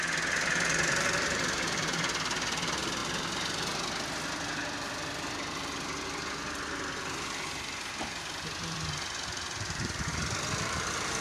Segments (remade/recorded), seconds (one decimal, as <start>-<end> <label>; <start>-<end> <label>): 0.0-3.0 remade; 3.0-8.2 recorded; 8.2-11.2 remade